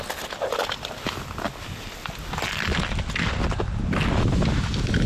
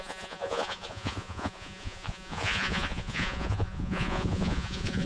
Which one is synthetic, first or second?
second